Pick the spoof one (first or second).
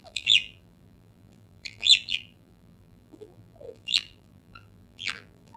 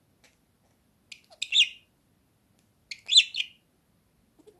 first